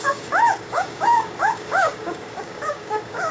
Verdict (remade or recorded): remade